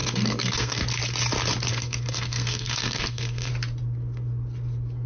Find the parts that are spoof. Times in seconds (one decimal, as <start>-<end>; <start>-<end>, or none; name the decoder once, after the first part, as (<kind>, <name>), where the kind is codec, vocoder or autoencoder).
0.0-0.8 (codec, SNAC); 1.7-3.5